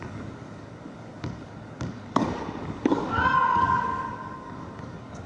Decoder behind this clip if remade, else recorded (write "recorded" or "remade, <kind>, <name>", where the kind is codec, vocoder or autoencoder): remade, codec, DAC